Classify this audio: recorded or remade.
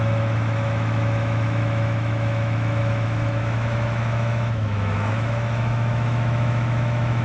remade